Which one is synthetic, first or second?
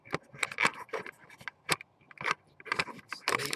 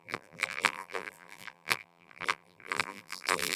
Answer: second